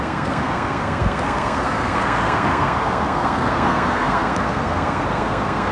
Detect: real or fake fake